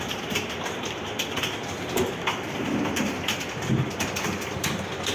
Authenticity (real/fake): real